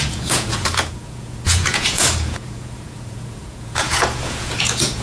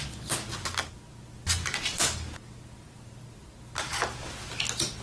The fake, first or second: first